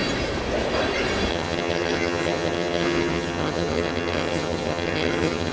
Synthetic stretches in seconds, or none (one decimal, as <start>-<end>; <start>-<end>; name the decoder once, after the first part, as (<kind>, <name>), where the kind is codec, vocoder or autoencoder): 1.3-5.5 (vocoder, HiFi-GAN)